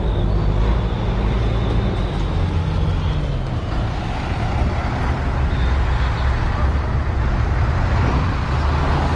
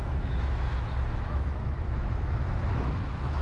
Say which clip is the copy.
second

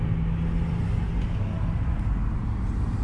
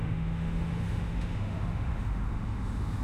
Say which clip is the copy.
second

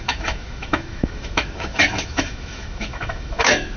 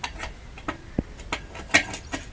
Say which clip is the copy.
first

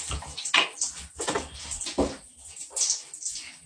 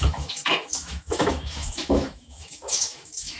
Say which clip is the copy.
second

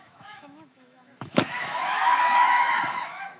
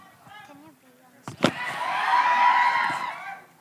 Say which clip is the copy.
first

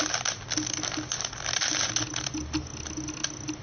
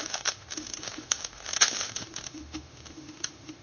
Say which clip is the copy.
second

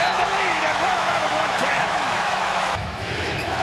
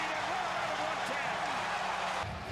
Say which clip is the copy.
first